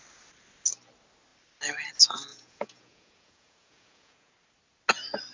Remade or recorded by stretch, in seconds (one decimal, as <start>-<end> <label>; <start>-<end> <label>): 0.0-2.3 recorded; 2.3-4.3 remade; 4.3-5.3 recorded